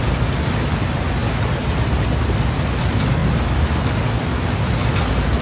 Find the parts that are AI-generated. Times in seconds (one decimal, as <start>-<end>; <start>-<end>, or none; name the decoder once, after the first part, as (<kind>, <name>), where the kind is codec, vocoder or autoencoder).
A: none